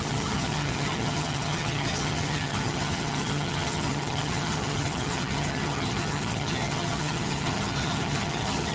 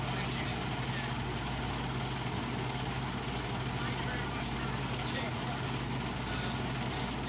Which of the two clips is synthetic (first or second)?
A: first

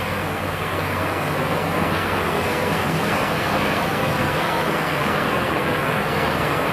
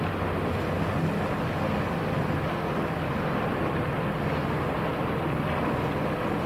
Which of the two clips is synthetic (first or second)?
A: first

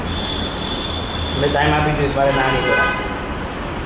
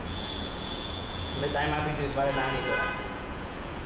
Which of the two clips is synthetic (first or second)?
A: second